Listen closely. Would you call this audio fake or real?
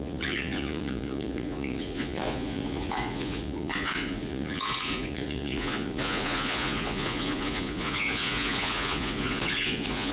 fake